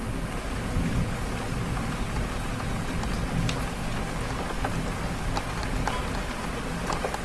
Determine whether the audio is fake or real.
real